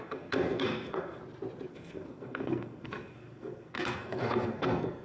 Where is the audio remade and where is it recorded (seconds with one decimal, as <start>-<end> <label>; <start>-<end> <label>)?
0.0-1.2 remade; 1.2-1.7 recorded; 1.7-5.0 remade